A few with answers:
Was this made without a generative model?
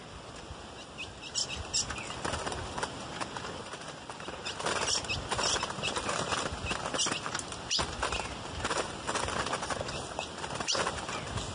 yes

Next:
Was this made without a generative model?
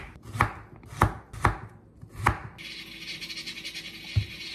yes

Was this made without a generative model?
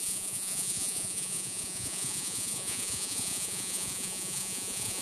no